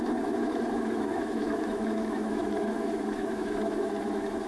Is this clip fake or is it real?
fake